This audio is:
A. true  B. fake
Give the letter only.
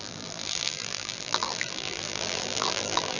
B